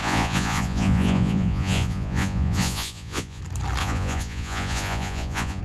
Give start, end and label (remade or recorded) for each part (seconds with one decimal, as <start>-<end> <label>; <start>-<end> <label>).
0.0-3.4 remade; 3.4-3.8 recorded; 3.8-5.6 remade